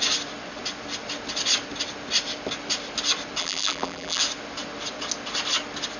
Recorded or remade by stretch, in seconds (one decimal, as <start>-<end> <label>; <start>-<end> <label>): 0.0-3.4 recorded; 3.4-4.2 remade; 4.2-6.0 recorded